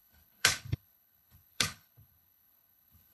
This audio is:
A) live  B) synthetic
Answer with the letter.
B